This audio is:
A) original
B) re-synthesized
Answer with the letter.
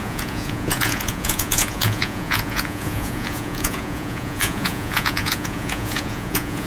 B